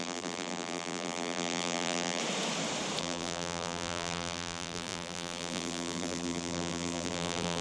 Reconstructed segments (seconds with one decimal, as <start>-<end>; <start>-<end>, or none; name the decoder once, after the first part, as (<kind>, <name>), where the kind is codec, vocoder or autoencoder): 0.0-2.2 (vocoder, BigVGAN v2); 3.0-7.6